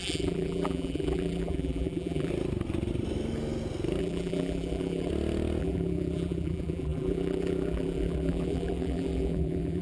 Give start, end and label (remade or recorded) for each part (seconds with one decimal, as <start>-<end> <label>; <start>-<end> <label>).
0.0-2.3 remade; 2.3-4.0 recorded; 4.0-5.1 remade; 5.1-5.6 recorded; 5.6-9.8 remade